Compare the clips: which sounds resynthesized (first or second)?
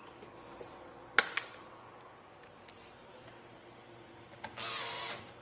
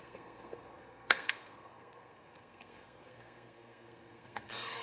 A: second